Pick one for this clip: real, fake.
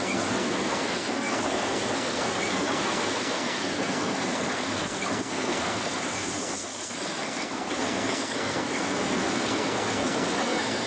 fake